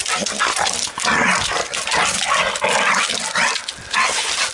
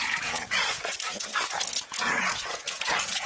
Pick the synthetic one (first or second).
second